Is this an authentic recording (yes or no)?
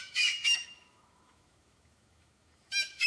no